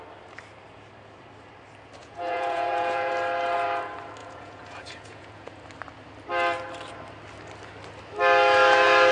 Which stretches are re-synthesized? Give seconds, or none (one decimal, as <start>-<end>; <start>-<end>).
2.0-3.1; 4.2-5.6